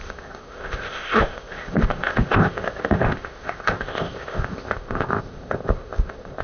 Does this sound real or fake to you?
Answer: fake